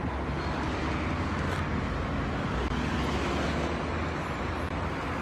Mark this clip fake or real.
real